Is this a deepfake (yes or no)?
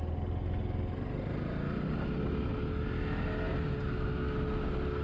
no